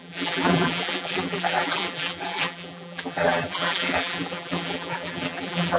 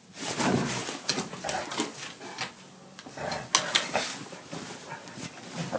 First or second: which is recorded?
second